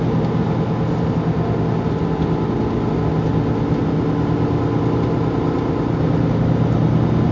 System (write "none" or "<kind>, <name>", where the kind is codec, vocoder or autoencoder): none